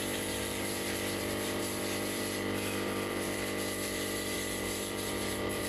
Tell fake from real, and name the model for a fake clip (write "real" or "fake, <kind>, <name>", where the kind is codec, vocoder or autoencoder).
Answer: fake, vocoder, BigVGAN v2